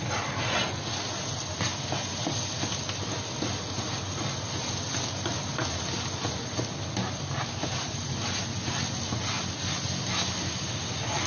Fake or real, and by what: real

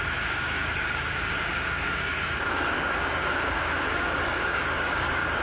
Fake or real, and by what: fake, codec, DAC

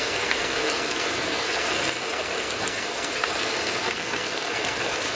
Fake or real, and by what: fake, codec, SNAC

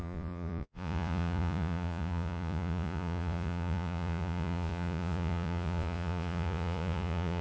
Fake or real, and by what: fake, vocoder, Vocos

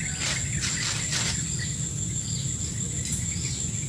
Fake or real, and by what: real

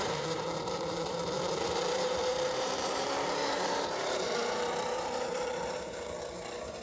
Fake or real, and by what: fake, vocoder, BigVGAN v2